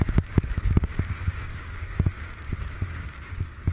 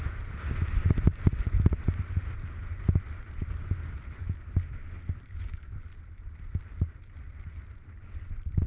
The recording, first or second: second